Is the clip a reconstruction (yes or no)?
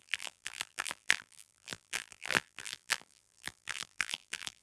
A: yes